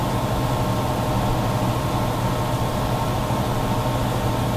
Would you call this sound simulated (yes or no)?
no